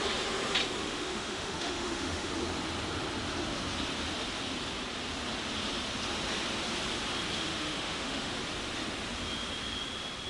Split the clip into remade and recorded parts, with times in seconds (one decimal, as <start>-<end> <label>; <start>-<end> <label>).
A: 0.0-0.8 recorded; 0.8-2.3 remade; 2.3-7.5 recorded; 7.5-8.3 remade; 8.3-10.3 recorded